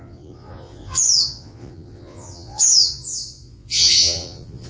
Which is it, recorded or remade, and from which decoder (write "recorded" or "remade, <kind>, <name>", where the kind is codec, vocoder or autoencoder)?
remade, vocoder, Vocos